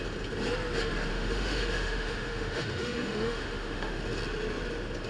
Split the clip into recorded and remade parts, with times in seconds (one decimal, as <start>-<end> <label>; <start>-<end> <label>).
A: 0.0-1.1 recorded; 1.1-4.0 remade; 4.0-5.1 recorded